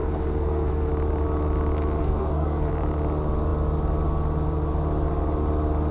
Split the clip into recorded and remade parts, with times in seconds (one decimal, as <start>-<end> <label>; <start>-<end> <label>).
0.0-0.9 remade; 0.9-2.0 recorded; 2.0-2.7 remade; 2.7-5.9 recorded

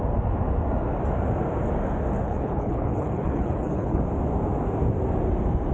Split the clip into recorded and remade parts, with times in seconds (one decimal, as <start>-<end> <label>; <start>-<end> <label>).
0.0-2.2 recorded; 2.2-4.0 remade; 4.0-5.7 recorded

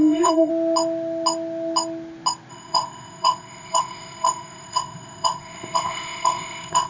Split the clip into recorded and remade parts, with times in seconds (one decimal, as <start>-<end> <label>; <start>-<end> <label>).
0.0-0.5 remade; 0.5-2.5 recorded; 2.5-6.9 remade